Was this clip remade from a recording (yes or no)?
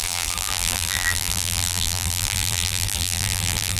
yes